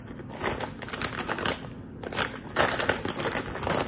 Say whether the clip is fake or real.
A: real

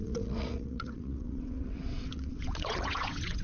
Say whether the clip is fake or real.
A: fake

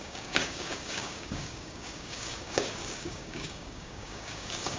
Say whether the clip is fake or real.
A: fake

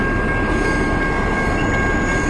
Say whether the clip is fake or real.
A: real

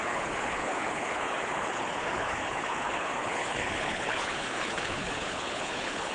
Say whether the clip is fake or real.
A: fake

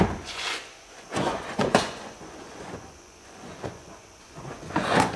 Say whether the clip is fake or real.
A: fake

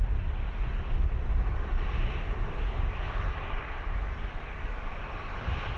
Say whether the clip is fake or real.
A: real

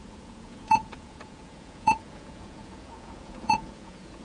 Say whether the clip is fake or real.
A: fake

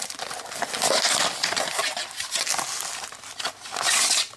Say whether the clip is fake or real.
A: real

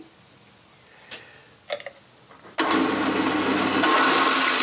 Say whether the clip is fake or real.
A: real